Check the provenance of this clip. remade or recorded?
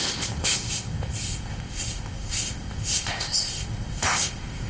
remade